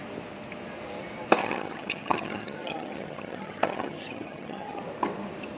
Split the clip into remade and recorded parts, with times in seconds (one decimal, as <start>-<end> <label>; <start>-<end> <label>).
0.0-1.4 recorded; 1.4-4.8 remade; 4.8-5.6 recorded

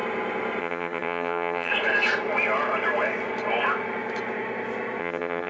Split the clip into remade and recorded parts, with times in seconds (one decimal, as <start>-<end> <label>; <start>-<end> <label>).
0.0-0.6 recorded; 0.6-1.7 remade; 1.7-5.0 recorded; 5.0-5.5 remade

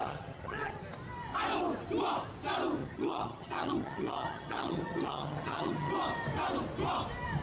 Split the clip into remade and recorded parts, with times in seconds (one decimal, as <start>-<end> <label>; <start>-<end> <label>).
0.0-0.7 remade; 0.7-2.8 recorded; 2.8-5.9 remade; 5.9-7.4 recorded